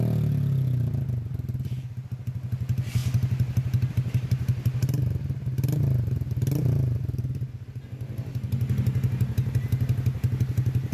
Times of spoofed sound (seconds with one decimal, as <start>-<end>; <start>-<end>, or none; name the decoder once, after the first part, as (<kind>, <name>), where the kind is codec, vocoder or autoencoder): none